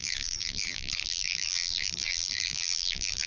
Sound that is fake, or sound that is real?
fake